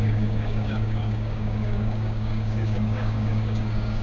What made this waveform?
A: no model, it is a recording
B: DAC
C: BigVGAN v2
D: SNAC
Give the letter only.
B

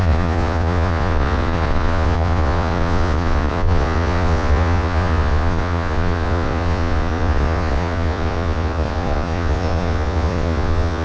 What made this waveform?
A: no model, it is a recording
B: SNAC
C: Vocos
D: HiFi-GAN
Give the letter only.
C